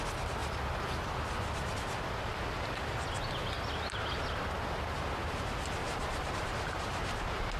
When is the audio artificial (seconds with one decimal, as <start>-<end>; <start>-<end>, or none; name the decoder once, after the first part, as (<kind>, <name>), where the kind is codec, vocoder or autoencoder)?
5.8-6.5 (vocoder, BigVGAN v2)